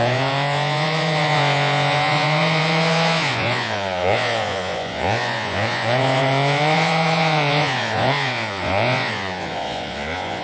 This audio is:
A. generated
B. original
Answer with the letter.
A